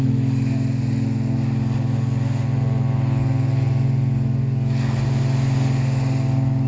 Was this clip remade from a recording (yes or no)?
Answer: no